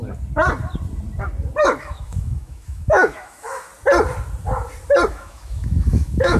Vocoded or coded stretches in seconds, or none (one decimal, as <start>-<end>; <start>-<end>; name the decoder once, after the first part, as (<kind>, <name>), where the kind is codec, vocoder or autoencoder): 1.8-3.7 (autoencoder, DAC-VAE); 5.1-6.4